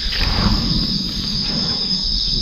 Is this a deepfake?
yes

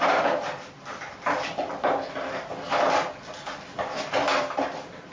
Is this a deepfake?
no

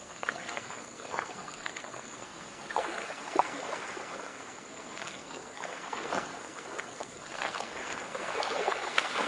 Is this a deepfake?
yes